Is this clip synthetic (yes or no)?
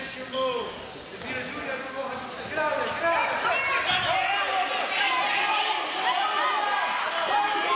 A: no